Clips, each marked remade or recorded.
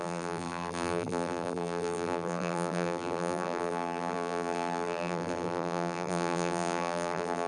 remade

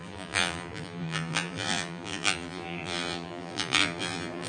remade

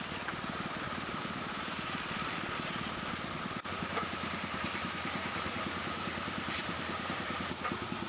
remade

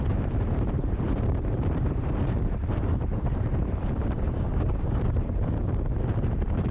remade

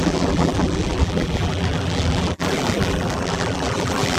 remade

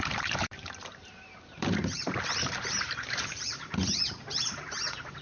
remade